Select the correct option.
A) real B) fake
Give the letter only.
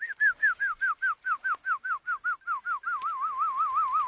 A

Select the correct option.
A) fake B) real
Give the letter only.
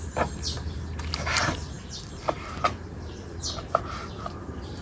B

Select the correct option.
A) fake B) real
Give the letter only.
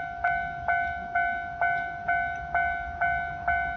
B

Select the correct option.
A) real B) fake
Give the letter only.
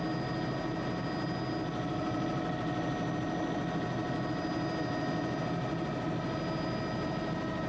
A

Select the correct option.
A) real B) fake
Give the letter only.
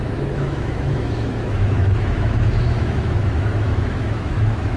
B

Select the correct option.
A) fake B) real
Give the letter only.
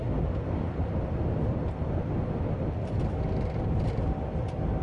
B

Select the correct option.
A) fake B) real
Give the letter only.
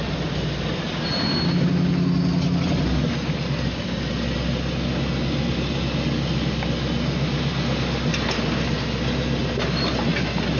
B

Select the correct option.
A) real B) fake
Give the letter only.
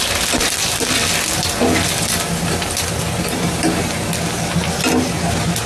A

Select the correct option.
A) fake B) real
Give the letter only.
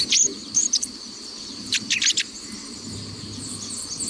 B